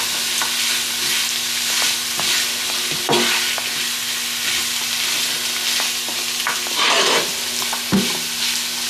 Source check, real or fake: real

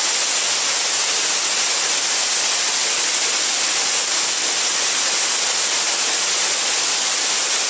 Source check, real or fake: real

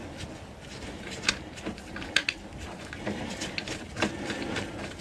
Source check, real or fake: real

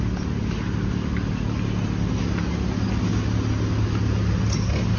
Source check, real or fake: real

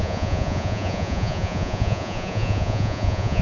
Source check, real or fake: fake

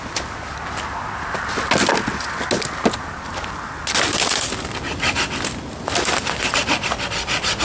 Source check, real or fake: real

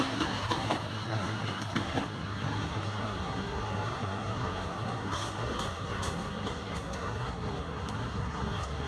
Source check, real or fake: fake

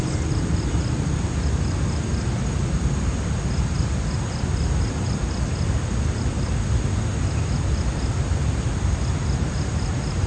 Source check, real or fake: real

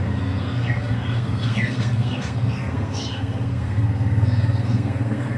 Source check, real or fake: fake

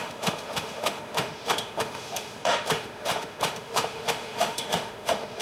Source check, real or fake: fake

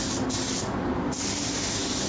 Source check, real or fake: real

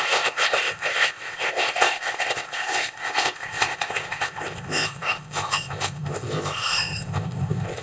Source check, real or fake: fake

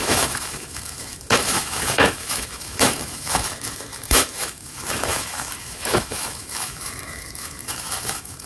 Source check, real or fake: fake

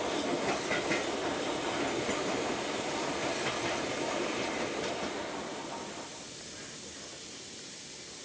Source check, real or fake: real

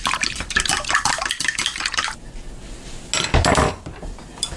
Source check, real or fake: real